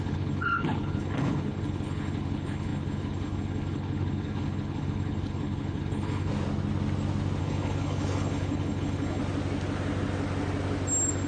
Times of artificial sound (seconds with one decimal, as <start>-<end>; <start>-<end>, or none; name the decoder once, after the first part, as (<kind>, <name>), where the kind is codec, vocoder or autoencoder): 0.0-6.3 (codec, HILCodec); 7.4-9.2